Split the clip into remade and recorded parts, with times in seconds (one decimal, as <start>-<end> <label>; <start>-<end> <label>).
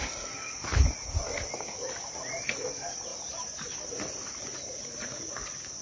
0.0-5.8 recorded